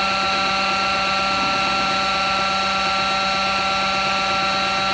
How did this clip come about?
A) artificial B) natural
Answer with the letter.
B